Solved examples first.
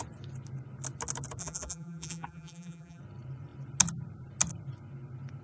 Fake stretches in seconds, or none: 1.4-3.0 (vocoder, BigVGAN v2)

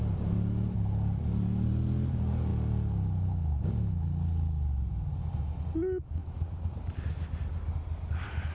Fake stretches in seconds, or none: 6.2-6.9 (vocoder, BigVGAN v2)

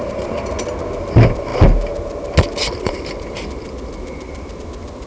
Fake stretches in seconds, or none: 0.0-0.5 (vocoder, BigVGAN v2)

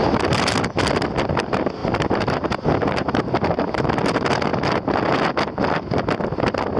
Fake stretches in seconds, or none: 1.8-3.8 (vocoder, BigVGAN v2)

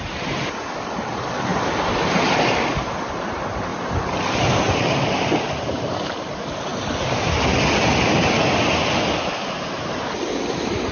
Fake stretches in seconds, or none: 0.0-3.7 (vocoder, BigVGAN v2); 4.6-6.7; 9.3-10.9

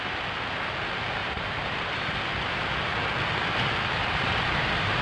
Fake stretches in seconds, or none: 1.2-2.2 (vocoder, BigVGAN v2); 4.0-5.0

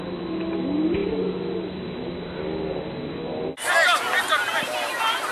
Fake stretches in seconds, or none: none